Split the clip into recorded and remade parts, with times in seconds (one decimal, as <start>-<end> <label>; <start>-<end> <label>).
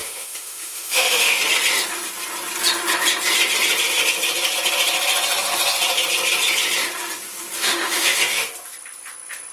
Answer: 0.0-1.4 remade; 1.4-7.6 recorded; 7.6-8.5 remade; 8.5-9.5 recorded